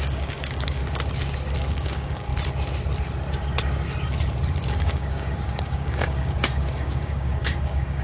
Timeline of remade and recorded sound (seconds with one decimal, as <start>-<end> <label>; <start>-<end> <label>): 0.0-0.8 remade; 0.8-1.7 recorded; 1.7-2.3 remade; 2.3-4.7 recorded; 4.7-8.0 remade